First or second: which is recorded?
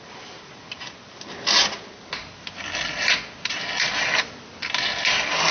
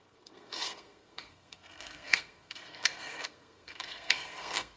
first